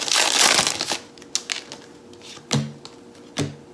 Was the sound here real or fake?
real